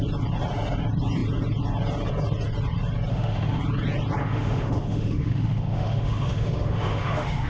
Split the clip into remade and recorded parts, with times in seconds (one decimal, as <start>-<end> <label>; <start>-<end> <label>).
0.0-3.1 recorded; 3.1-3.6 remade; 3.6-4.2 recorded; 4.2-7.5 remade